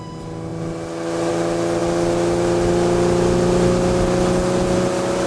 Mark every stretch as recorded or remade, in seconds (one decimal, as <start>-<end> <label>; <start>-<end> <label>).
0.0-5.3 recorded